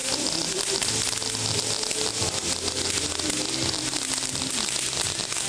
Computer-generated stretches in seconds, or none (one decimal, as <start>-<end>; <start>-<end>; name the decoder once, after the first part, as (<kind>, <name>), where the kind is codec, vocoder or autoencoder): none